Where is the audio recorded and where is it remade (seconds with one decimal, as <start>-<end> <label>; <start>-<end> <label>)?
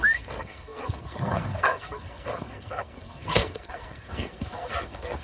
0.0-5.2 remade